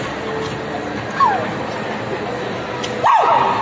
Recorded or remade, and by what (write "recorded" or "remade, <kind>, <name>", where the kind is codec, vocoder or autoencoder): recorded